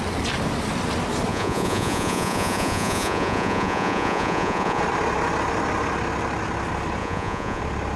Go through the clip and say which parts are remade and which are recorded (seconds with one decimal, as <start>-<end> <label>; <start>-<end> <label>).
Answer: 0.0-1.3 recorded; 1.3-4.8 remade; 4.8-7.0 recorded; 7.0-7.6 remade; 7.6-8.0 recorded